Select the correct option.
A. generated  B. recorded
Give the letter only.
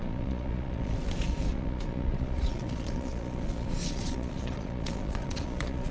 A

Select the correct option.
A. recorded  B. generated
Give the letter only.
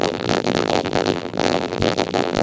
B